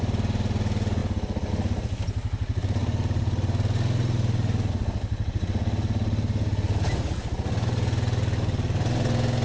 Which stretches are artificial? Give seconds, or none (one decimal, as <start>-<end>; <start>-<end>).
none